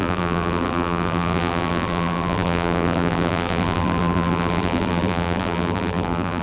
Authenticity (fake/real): fake